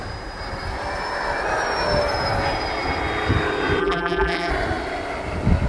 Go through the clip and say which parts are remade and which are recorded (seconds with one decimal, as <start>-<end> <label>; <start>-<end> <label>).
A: 0.0-3.8 recorded; 3.8-4.5 remade; 4.5-5.7 recorded